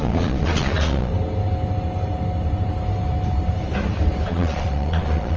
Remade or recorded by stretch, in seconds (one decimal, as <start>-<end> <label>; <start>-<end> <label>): 0.0-1.1 remade; 1.1-4.3 recorded; 4.3-5.4 remade

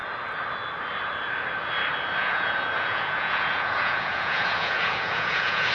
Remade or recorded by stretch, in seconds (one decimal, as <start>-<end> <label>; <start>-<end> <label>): 0.0-2.2 recorded; 2.2-5.7 remade

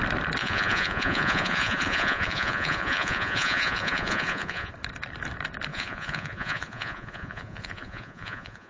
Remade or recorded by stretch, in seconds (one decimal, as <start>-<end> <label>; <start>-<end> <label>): 0.0-0.4 recorded; 0.4-4.7 remade; 4.7-5.7 recorded; 5.7-8.7 remade

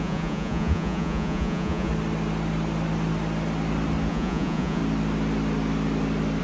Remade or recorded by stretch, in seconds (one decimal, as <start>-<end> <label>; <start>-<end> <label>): 0.0-1.9 remade; 1.9-4.1 recorded; 4.1-4.8 remade; 4.8-6.4 recorded

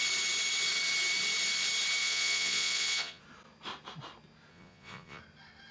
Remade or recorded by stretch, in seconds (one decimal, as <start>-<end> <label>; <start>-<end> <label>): 0.0-2.0 recorded; 2.0-3.2 remade; 3.2-4.5 recorded; 4.5-5.2 remade; 5.2-5.7 recorded